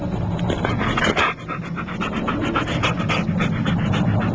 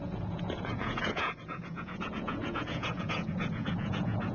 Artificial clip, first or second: second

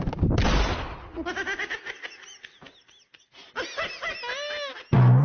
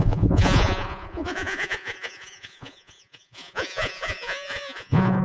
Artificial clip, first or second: second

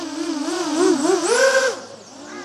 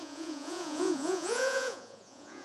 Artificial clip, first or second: second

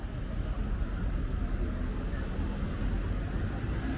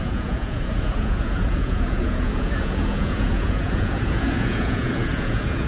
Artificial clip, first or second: second